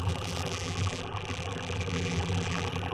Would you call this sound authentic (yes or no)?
no